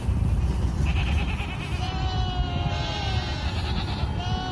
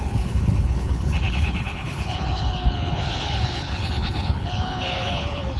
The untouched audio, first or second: first